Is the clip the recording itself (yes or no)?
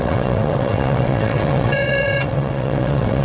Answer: no